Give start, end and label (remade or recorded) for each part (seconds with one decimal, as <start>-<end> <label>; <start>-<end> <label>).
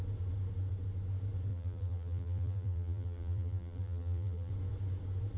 0.0-1.5 recorded; 1.5-4.5 remade; 4.5-5.4 recorded